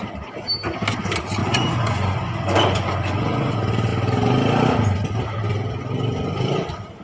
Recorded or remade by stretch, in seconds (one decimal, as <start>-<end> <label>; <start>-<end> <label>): 0.0-1.4 recorded; 1.4-3.5 remade; 3.5-7.0 recorded